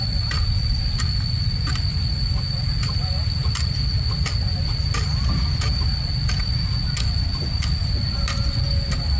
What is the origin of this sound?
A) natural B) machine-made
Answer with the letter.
A